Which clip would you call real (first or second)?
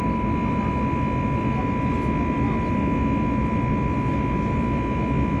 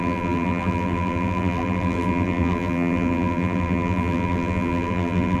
first